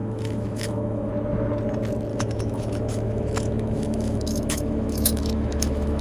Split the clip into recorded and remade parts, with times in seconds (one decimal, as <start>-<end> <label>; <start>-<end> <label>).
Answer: 0.0-1.1 remade; 1.1-2.1 recorded; 2.1-6.0 remade